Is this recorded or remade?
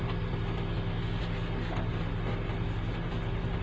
recorded